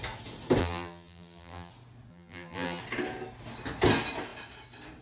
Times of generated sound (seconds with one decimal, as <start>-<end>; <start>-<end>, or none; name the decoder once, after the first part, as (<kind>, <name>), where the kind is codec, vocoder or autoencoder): 0.6-1.7 (vocoder, BigVGAN v2); 2.1-2.8